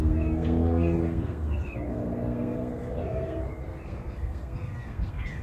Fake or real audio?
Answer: fake